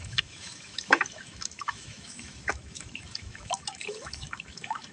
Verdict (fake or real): fake